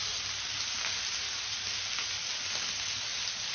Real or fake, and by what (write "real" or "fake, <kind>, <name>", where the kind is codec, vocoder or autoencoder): real